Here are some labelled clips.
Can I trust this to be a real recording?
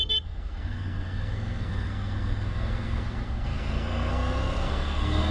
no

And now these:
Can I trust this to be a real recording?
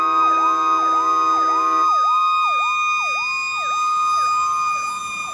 yes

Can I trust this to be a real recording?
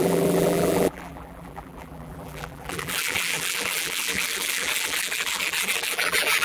no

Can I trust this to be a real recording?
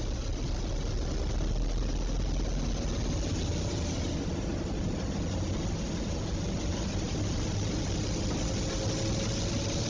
yes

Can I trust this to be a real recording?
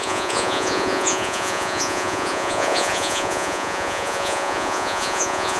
no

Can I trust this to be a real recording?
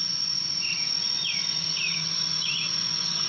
no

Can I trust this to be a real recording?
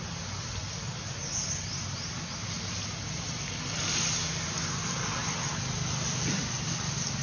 yes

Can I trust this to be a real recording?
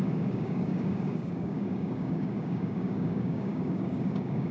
no